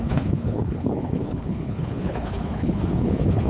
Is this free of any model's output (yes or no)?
no